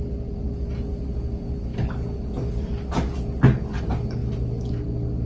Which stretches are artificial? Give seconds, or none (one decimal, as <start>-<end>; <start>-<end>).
none